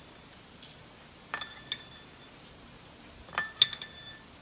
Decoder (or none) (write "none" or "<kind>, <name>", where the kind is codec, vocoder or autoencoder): none